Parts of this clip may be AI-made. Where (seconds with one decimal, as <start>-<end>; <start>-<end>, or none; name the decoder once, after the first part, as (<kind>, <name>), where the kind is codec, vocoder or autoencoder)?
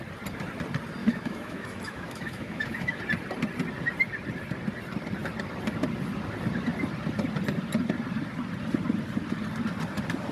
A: 1.0-3.0 (autoencoder, DAC-VAE)